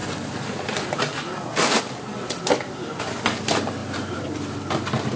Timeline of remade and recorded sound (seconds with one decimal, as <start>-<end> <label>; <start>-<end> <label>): 0.0-5.2 remade